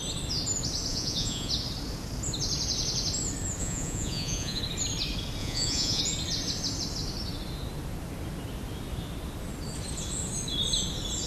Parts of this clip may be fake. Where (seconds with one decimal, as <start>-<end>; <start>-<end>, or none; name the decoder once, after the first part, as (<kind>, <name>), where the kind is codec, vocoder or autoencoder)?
0.9-1.5 (vocoder, Vocos); 3.6-4.6; 5.4-6.0